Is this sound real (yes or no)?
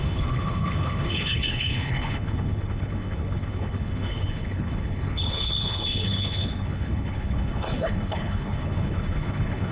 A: no